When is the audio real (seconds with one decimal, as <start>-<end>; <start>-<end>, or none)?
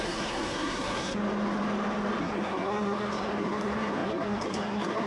1.2-2.2